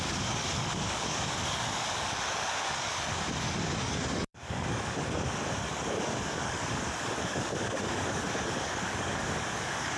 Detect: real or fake fake